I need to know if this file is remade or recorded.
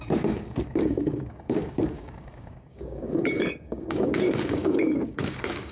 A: remade